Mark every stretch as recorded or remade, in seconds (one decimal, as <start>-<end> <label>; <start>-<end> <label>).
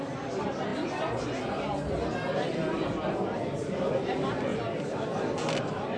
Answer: 0.0-6.0 recorded